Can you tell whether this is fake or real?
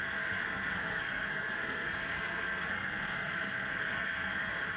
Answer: fake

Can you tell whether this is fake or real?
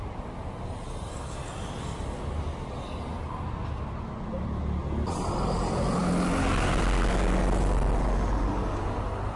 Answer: real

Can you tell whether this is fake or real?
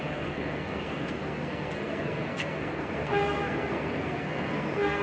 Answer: fake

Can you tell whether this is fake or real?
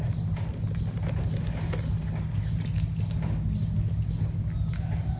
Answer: real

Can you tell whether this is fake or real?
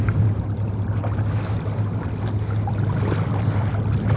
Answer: real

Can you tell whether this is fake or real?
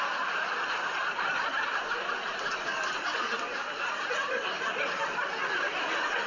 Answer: real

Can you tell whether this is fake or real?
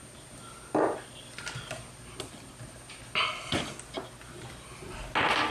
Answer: real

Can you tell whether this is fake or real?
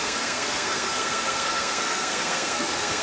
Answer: fake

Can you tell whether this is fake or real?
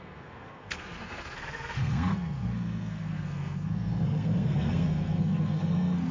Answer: fake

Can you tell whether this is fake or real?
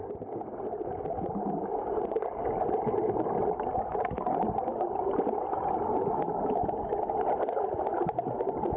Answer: real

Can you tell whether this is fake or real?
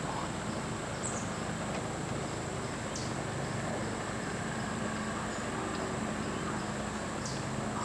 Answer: real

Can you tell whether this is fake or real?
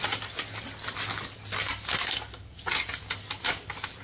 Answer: real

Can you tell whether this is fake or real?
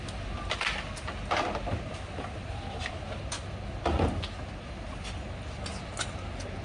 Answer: real